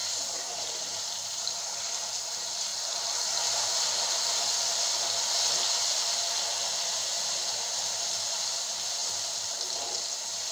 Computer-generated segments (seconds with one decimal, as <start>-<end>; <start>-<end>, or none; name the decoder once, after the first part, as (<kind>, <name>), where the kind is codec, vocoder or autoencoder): 0.0-2.7 (vocoder, BigVGAN v2); 6.9-10.5